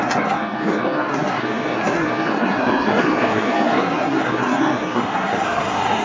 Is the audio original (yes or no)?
no